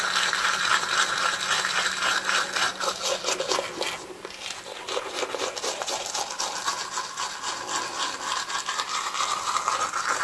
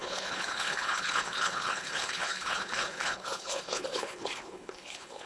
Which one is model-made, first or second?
second